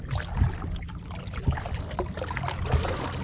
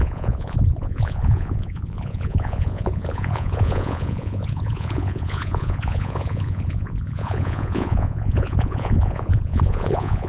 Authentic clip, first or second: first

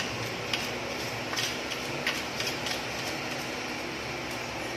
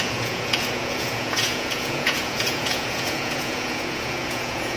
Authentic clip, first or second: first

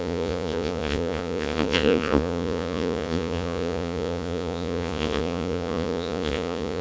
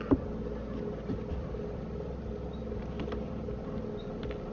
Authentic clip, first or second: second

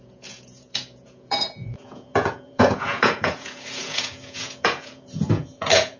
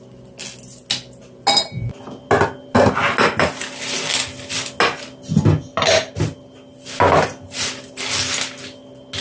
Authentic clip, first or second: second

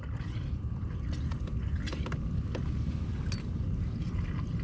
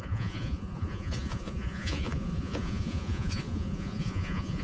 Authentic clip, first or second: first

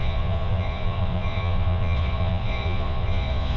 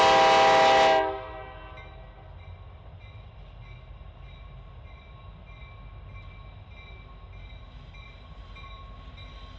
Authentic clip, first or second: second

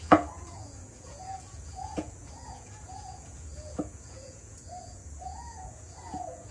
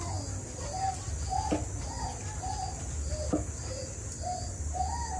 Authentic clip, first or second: second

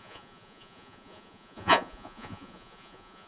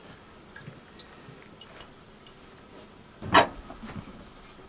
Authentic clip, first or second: second